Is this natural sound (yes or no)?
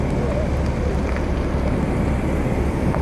yes